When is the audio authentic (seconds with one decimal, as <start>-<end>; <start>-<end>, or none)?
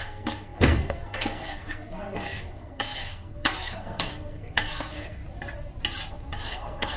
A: 5.2-6.1